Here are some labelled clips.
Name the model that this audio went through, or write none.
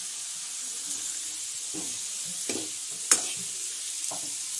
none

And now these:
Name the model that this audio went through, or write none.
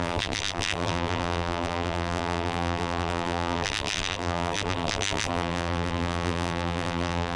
vocoder, BigVGAN v2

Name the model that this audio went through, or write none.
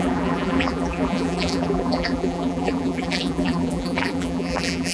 vocoder, BigVGAN v2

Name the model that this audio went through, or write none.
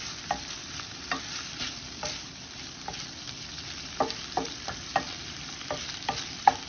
vocoder, BigVGAN v2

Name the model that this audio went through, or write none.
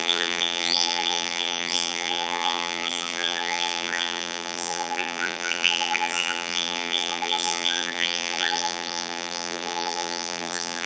vocoder, BigVGAN v2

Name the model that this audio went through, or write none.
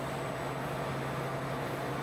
none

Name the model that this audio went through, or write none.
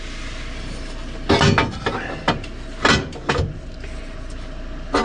none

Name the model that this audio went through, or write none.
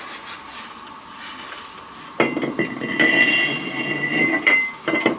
none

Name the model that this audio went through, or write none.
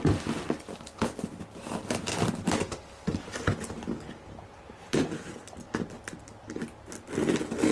none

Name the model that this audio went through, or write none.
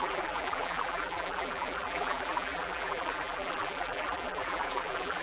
vocoder, BigVGAN v2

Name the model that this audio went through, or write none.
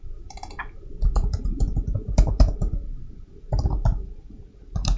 vocoder, BigVGAN v2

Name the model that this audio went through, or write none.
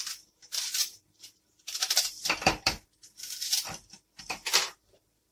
vocoder, BigVGAN v2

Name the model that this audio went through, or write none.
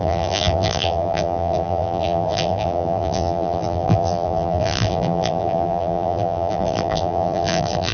vocoder, BigVGAN v2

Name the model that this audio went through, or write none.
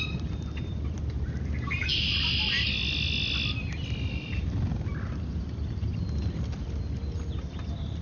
none